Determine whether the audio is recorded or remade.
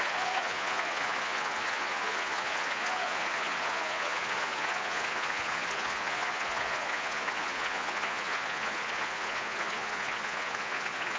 remade